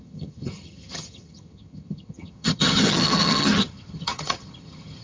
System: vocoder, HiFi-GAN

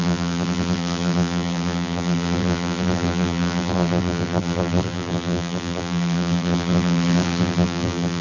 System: vocoder, BigVGAN v2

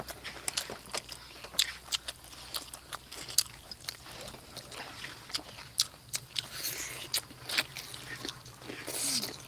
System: none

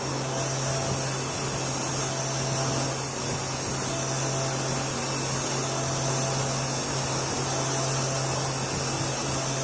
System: none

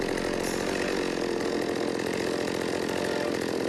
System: none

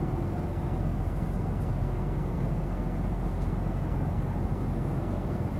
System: codec, SNAC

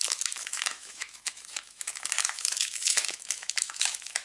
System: autoencoder, DAC-VAE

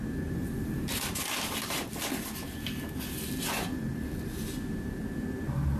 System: none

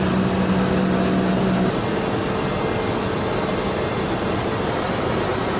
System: none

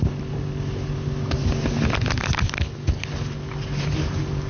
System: none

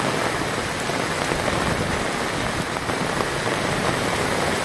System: none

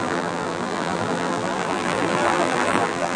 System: vocoder, BigVGAN v2